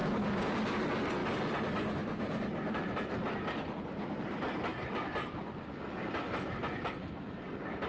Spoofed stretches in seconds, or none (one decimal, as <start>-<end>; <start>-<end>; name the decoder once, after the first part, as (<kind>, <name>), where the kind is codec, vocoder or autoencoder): 0.0-0.5 (codec, DAC)